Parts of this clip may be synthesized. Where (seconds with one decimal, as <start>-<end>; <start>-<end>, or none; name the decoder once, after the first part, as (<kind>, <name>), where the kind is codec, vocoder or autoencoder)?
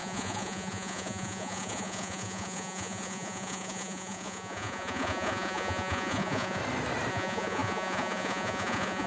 0.0-6.6 (vocoder, Vocos); 7.1-9.1